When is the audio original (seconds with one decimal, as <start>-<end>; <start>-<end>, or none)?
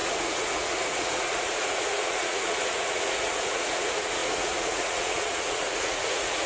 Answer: none